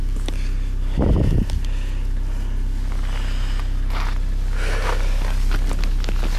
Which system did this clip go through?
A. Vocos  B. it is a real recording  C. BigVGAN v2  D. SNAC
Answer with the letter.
B